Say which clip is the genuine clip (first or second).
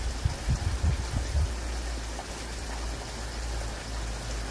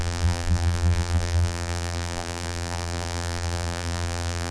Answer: first